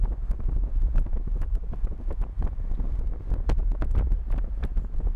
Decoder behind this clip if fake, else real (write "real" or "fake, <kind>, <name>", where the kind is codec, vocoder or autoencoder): real